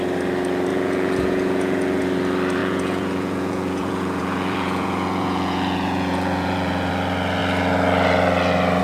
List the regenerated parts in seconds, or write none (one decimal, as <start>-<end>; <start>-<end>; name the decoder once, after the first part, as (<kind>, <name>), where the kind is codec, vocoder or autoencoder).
0.7-2.0 (vocoder, Vocos); 2.6-6.9